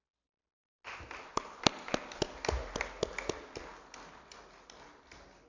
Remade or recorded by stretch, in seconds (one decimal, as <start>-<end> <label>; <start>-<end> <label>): 0.0-5.5 recorded